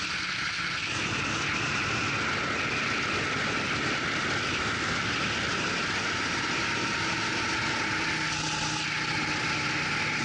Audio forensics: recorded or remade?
recorded